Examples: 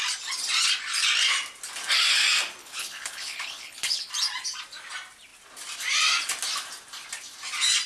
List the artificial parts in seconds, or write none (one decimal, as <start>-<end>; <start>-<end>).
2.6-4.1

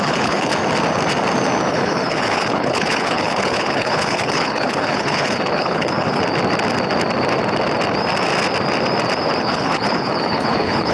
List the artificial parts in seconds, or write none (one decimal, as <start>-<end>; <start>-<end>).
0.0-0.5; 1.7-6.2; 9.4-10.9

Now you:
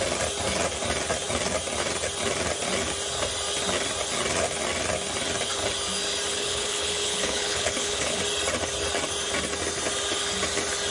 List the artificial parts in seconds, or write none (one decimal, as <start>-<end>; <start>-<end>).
6.3-8.2

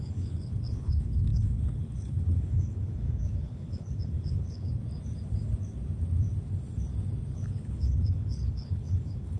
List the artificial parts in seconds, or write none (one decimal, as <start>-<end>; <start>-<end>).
0.0-4.8; 7.3-9.4

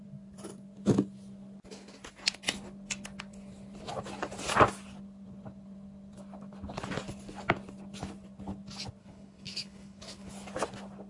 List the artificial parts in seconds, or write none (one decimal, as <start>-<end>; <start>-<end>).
9.0-10.3

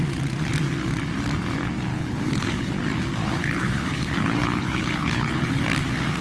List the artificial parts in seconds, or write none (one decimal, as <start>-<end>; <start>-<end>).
1.9-2.7; 3.2-5.6